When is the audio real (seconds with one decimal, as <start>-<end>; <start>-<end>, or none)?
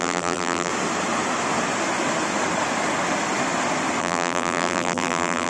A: 0.7-4.0